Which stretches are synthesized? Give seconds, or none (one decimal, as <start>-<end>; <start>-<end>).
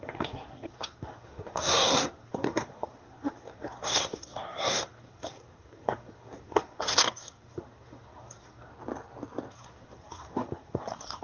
0.0-8.7; 9.5-11.2